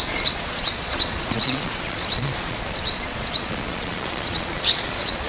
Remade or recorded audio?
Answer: remade